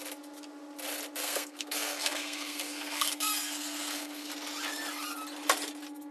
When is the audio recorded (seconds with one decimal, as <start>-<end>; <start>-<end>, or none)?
0.0-1.2; 4.3-6.1